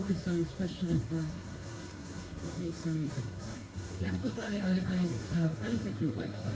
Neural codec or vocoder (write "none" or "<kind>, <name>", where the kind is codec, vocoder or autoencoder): codec, SNAC